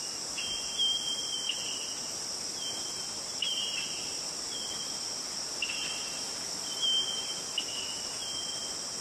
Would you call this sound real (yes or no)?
yes